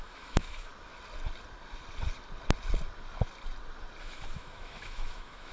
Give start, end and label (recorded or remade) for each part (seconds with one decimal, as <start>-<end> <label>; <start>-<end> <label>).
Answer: 0.0-0.7 remade; 0.7-4.0 recorded; 4.0-5.5 remade